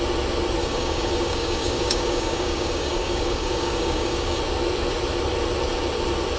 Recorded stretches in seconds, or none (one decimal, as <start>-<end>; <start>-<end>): 0.0-0.6; 4.4-6.4